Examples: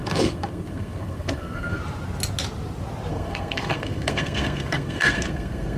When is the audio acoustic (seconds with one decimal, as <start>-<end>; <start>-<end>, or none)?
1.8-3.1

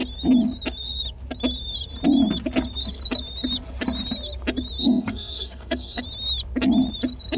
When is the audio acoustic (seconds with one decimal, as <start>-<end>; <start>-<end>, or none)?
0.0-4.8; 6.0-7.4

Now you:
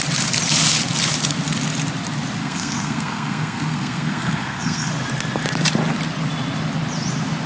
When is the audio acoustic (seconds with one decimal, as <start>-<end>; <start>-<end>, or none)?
0.0-2.4; 4.9-7.5

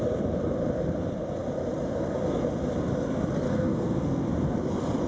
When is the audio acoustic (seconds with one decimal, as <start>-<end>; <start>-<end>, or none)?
0.0-3.5; 4.2-5.1

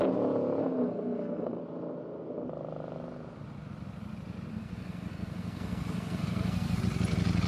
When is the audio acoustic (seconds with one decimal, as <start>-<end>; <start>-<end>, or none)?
0.0-0.6; 1.6-4.5; 6.8-7.5